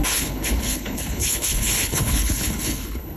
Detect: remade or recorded remade